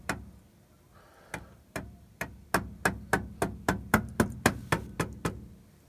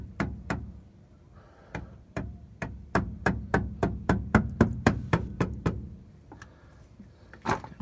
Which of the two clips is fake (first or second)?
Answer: second